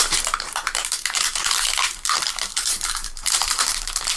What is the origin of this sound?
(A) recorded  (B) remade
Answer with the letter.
B